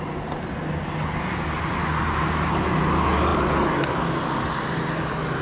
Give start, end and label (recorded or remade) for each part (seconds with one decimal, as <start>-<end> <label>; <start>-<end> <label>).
0.0-5.4 recorded

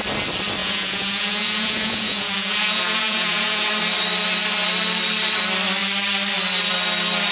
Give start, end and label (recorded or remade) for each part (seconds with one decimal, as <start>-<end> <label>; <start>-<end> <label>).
0.0-0.6 recorded; 0.6-3.7 remade; 3.7-7.3 recorded